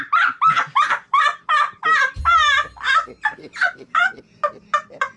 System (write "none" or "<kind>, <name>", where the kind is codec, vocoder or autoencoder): none